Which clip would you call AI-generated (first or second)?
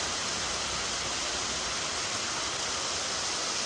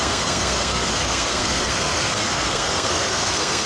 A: second